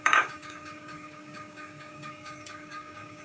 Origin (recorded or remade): remade